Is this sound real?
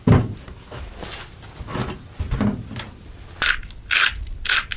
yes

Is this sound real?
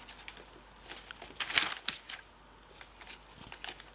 yes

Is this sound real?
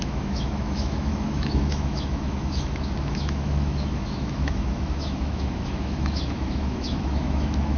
no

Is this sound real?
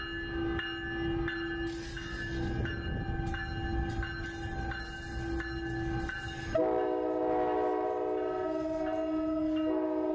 yes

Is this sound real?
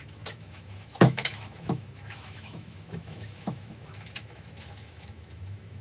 no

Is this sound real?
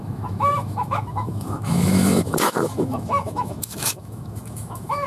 no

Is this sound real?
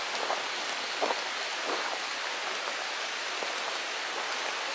yes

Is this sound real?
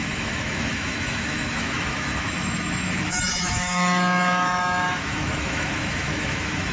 no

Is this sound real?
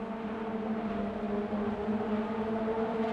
yes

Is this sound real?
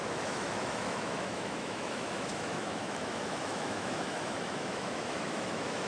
no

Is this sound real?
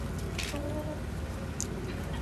yes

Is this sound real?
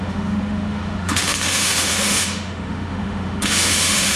no